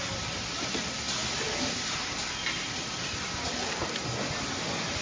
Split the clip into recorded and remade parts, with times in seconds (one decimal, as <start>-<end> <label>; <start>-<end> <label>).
0.0-5.0 recorded

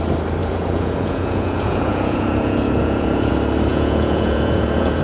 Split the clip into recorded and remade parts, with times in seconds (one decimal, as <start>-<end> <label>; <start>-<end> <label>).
0.0-0.4 recorded; 0.4-3.3 remade; 3.3-3.7 recorded; 3.7-5.0 remade

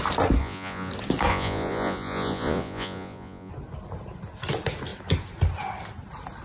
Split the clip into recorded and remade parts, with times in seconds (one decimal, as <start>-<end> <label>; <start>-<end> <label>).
0.0-0.4 recorded; 0.4-0.9 remade; 0.9-1.3 recorded; 1.3-3.5 remade; 3.5-6.4 recorded